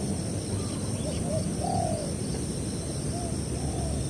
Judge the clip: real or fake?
real